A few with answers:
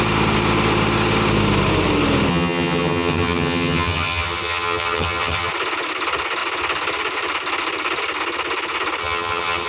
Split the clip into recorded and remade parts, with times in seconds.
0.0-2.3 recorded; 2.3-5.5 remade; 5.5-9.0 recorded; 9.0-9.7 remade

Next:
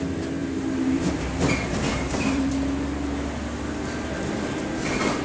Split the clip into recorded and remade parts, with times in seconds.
0.0-0.4 recorded; 0.4-1.1 remade; 1.1-1.9 recorded; 1.9-2.5 remade; 2.5-5.2 recorded

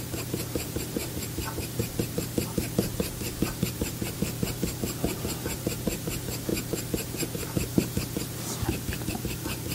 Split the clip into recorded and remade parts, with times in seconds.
0.0-9.7 remade

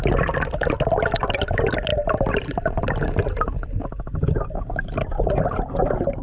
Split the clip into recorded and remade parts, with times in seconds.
0.0-6.2 recorded

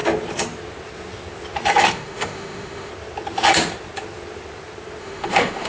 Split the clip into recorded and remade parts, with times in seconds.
0.0-1.9 recorded; 1.9-2.9 remade; 2.9-5.0 recorded; 5.0-5.7 remade

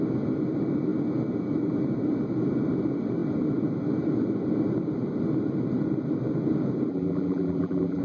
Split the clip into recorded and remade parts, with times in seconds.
0.0-6.9 recorded; 6.9-8.0 remade

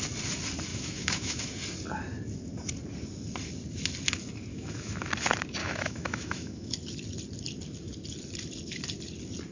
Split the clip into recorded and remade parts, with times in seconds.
0.0-0.7 recorded; 0.7-1.4 remade; 1.4-4.5 recorded; 4.5-5.1 remade; 5.1-5.6 recorded; 5.6-6.7 remade; 6.7-9.5 recorded

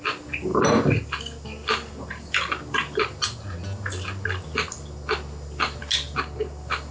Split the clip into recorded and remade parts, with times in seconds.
0.0-6.9 recorded